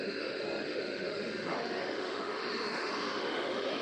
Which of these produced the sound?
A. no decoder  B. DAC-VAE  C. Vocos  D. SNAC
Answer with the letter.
B